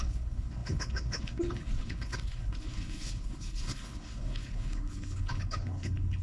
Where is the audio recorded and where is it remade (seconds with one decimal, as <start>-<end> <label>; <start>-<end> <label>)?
0.0-6.2 remade